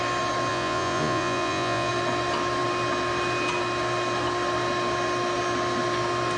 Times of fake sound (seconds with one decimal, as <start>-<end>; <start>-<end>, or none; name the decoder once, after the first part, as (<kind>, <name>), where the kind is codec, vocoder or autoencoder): 0.5-1.9 (vocoder, Vocos)